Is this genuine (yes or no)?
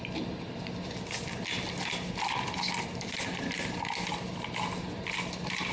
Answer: yes